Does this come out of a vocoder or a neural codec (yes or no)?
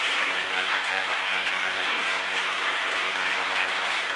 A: yes